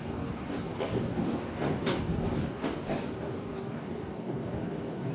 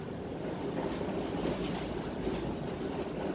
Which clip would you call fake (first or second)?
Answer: first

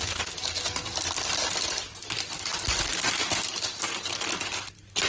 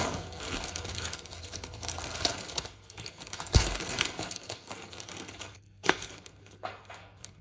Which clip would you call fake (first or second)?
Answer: second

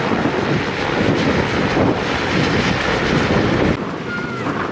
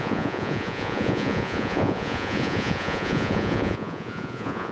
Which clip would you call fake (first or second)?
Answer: second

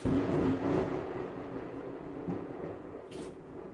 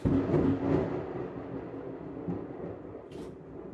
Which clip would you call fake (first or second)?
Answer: first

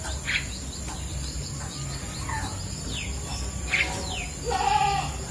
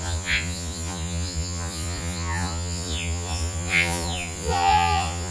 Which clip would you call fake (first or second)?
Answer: second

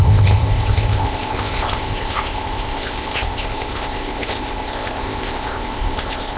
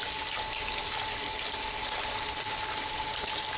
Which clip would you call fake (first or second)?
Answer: first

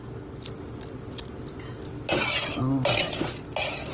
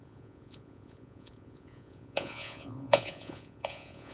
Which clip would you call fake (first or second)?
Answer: second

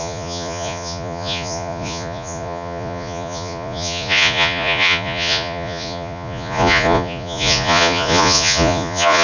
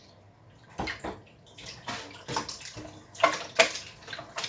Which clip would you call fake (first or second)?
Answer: first